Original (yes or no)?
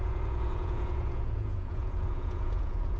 no